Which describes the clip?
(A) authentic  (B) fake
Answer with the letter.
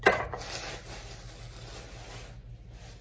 A